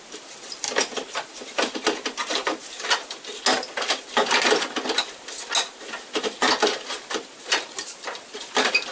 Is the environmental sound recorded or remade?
recorded